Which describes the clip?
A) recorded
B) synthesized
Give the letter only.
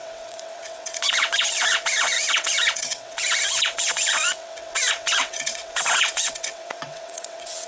B